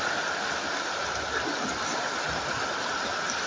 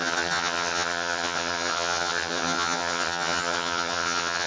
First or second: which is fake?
second